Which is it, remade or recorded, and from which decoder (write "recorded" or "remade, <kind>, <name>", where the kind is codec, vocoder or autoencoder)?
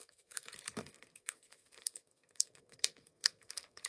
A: remade, codec, SNAC